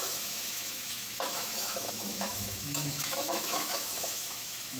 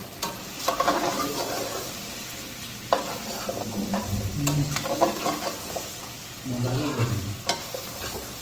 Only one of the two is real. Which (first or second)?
second